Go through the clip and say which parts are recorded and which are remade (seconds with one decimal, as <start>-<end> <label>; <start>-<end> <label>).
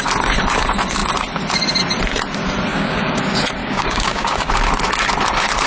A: 0.0-2.7 recorded; 2.7-3.2 remade; 3.2-3.6 recorded; 3.6-4.5 remade; 4.5-5.7 recorded